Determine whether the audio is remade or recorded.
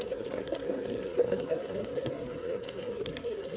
remade